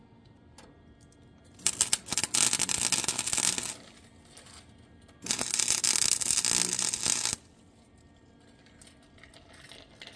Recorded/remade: recorded